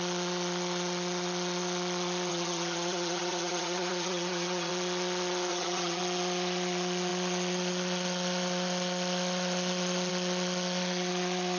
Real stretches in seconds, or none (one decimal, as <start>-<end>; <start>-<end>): 0.0-2.3; 4.7-5.5; 6.0-11.6